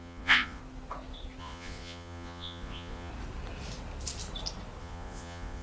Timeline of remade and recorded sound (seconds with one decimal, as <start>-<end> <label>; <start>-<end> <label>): 0.0-0.6 remade; 0.6-1.4 recorded; 1.4-3.1 remade; 3.1-4.8 recorded; 4.8-5.6 remade